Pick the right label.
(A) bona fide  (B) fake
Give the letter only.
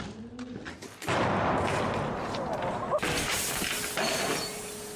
A